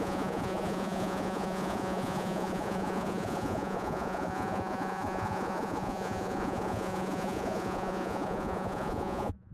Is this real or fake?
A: fake